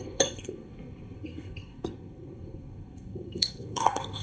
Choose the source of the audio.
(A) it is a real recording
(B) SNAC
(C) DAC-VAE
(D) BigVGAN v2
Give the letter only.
B